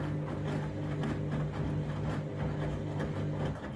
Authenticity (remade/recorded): recorded